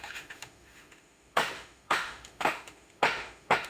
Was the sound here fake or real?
fake